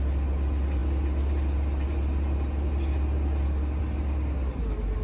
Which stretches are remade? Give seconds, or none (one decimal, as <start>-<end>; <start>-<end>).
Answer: none